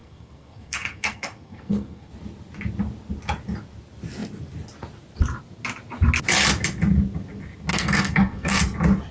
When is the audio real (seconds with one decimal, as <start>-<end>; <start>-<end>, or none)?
2.1-7.7; 8.6-9.1